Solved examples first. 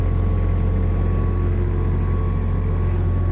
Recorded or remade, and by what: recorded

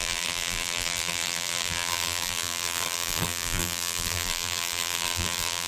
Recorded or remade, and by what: remade, vocoder, BigVGAN v2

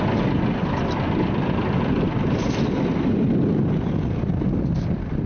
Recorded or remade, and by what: recorded